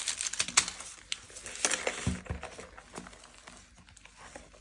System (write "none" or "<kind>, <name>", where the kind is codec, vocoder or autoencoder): none